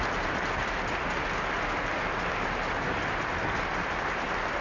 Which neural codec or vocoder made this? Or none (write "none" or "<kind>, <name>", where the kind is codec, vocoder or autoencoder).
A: none